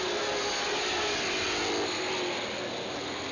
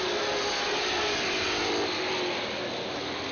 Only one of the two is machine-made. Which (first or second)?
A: second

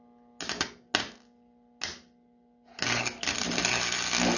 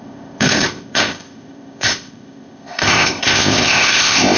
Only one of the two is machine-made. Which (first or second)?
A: second